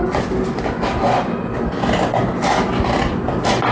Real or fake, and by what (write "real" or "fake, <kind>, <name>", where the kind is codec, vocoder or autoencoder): real